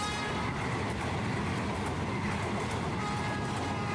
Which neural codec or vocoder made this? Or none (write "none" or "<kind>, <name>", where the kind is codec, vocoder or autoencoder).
none